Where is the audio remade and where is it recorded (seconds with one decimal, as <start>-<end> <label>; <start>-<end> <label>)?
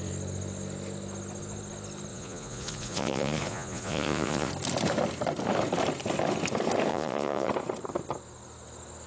0.0-2.1 recorded; 2.1-4.5 remade; 4.5-6.9 recorded; 6.9-7.5 remade; 7.5-9.1 recorded